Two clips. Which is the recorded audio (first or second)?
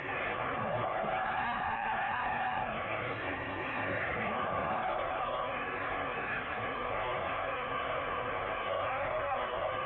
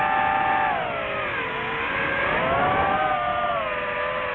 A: second